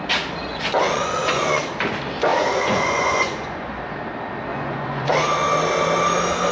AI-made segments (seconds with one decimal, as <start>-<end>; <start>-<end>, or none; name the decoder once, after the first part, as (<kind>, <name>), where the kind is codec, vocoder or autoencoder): 0.4-1.6 (vocoder, Vocos); 2.3-3.8; 4.5-5.1